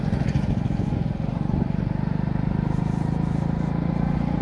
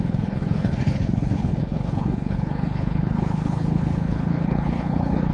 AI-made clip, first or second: second